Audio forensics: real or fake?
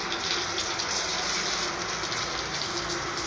real